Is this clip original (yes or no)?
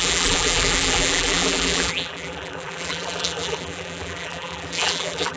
no